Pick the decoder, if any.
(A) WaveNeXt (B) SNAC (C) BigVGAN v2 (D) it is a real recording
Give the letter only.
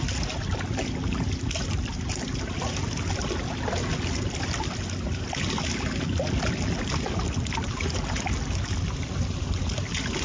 D